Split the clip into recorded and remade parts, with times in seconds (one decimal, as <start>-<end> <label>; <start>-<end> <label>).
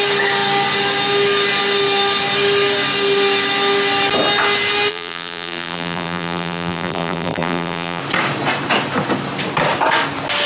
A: 0.0-4.9 recorded; 4.9-8.0 remade; 8.0-10.5 recorded